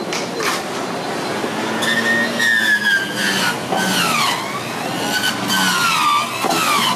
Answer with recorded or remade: recorded